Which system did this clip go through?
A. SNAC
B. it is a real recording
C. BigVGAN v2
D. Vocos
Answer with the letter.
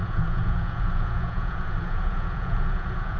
D